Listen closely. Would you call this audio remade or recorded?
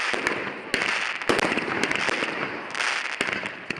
recorded